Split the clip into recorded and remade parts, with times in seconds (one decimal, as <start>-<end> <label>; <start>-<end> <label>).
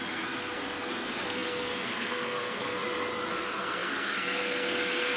0.0-2.8 remade; 2.8-3.3 recorded; 3.3-5.2 remade